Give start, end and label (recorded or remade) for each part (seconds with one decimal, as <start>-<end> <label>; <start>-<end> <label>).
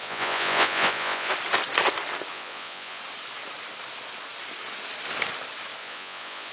0.0-1.3 remade; 1.3-2.3 recorded; 2.3-3.0 remade; 3.0-5.8 recorded; 5.8-6.5 remade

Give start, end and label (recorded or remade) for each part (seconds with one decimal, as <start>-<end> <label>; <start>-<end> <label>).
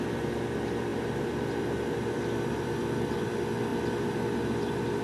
0.0-0.9 recorded; 0.9-3.3 remade; 3.3-5.0 recorded